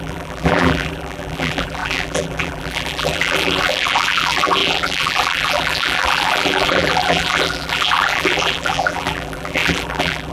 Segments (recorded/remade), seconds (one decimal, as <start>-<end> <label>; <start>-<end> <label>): 0.0-10.3 remade